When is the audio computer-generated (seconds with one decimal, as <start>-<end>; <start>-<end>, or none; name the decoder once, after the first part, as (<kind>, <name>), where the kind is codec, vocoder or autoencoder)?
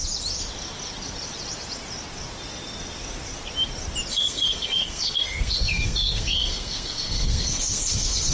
4.1-8.3 (codec, SNAC)